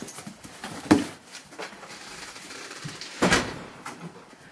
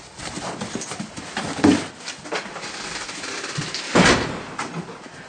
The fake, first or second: first